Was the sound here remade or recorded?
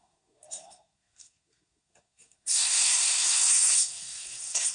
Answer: remade